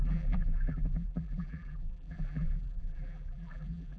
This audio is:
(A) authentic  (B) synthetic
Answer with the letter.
B